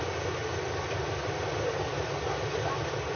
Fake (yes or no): no